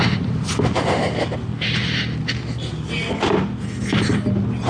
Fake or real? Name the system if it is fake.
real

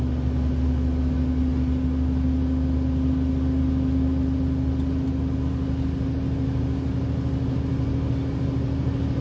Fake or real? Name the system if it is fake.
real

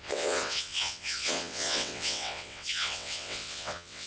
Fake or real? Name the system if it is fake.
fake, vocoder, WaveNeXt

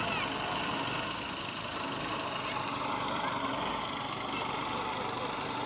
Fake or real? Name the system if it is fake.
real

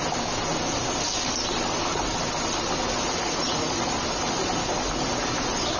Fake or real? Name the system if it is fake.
real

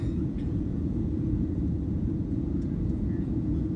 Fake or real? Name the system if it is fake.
fake, vocoder, Vocos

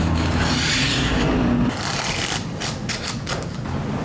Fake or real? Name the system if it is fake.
real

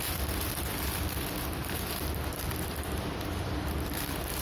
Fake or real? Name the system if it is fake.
fake, vocoder, BigVGAN v2